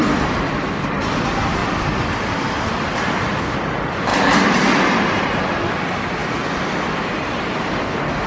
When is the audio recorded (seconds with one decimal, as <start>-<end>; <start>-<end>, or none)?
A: 0.0-6.2; 7.0-8.3